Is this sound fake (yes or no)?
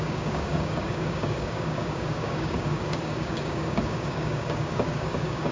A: yes